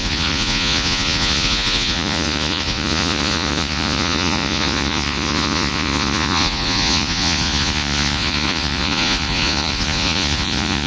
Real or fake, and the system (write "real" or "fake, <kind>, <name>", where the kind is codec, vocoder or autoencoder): fake, vocoder, Vocos